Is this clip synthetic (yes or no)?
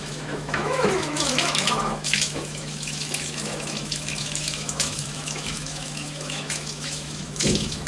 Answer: yes